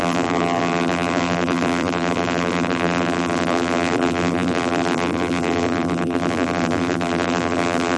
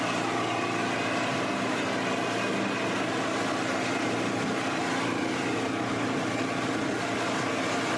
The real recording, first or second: second